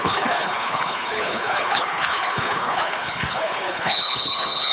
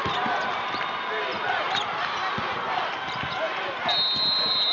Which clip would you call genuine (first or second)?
second